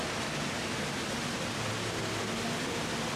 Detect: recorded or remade recorded